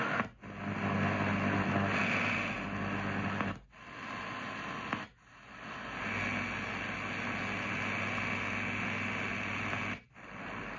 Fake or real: real